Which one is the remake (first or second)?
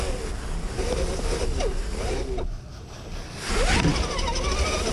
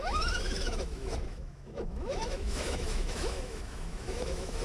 second